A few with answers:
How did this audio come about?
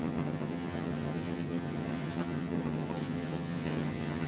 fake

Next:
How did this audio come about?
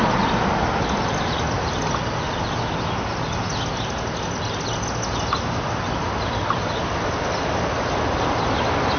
real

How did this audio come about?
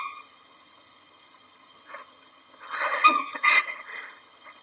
fake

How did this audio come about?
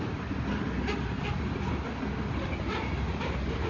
real